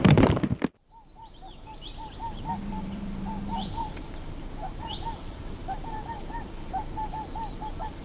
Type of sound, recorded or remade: remade